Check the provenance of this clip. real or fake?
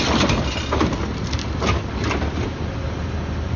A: real